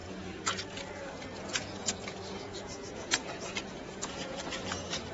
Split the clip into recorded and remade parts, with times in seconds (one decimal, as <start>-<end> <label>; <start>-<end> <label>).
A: 0.0-0.9 remade; 0.9-1.3 recorded; 1.3-4.4 remade; 4.4-5.1 recorded